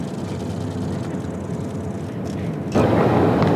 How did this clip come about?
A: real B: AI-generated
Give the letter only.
A